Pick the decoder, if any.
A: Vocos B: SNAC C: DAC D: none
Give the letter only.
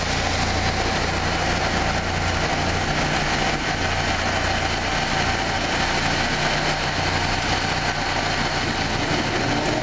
D